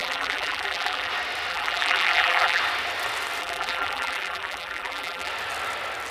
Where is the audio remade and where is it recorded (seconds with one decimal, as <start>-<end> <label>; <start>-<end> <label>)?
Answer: 0.0-1.1 remade; 1.1-1.5 recorded; 1.5-2.6 remade; 2.6-3.4 recorded; 3.4-5.3 remade; 5.3-6.1 recorded